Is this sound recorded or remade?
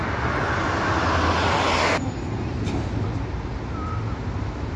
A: recorded